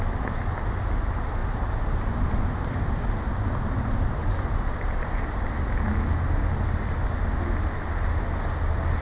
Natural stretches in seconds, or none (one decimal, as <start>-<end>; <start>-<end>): 0.0-3.9; 5.4-9.0